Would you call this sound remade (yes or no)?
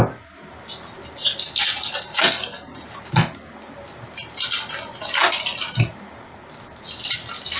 no